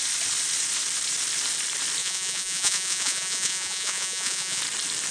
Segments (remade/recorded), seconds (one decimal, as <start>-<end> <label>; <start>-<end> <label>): 0.0-2.0 recorded; 2.0-4.6 remade; 4.6-5.1 recorded